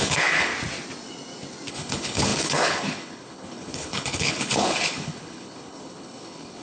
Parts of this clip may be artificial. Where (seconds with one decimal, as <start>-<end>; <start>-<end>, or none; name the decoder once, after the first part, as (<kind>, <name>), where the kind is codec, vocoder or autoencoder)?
0.0-0.5 (codec, HILCodec); 1.7-6.6